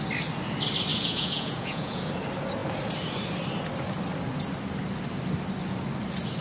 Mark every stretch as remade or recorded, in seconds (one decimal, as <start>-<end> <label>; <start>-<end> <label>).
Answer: 0.0-0.9 recorded; 0.9-2.1 remade; 2.1-6.4 recorded